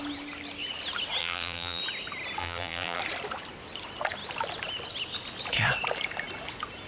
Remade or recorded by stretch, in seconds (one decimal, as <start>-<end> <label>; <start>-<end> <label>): 0.0-1.2 recorded; 1.2-1.8 remade; 1.8-2.4 recorded; 2.4-3.0 remade; 3.0-6.9 recorded